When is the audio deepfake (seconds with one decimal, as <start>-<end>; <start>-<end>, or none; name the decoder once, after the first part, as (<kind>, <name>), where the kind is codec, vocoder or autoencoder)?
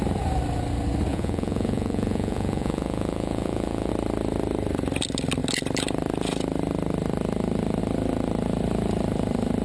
1.1-3.9 (vocoder, Vocos)